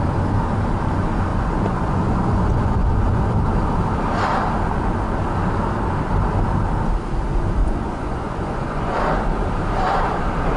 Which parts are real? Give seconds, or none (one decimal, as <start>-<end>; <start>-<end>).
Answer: 0.0-1.3; 3.3-7.6; 9.0-10.6